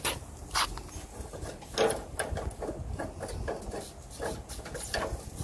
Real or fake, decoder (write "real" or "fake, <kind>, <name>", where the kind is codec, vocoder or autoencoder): real